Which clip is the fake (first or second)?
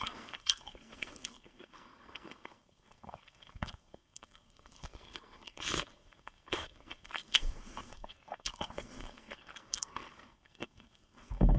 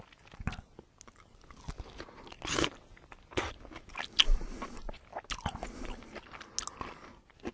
first